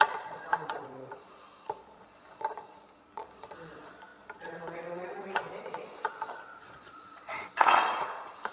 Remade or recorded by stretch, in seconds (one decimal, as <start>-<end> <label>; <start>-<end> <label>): 0.0-8.5 remade